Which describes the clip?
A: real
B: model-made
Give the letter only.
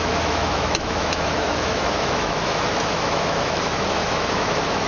B